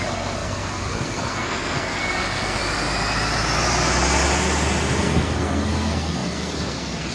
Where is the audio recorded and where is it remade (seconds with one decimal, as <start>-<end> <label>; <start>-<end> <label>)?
0.0-2.6 remade; 2.6-5.0 recorded; 5.0-7.1 remade